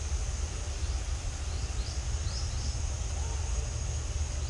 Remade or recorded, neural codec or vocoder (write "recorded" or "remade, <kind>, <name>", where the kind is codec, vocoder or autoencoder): recorded